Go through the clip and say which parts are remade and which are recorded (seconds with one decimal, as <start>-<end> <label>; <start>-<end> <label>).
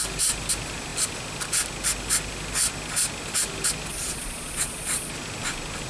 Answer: 0.0-3.9 recorded; 3.9-5.1 remade; 5.1-5.9 recorded